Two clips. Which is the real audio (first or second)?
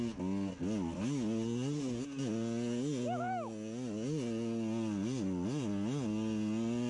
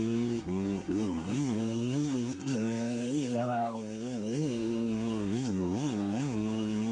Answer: first